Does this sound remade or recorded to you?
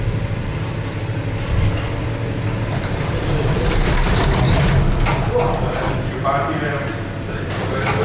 remade